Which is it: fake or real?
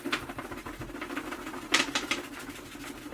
real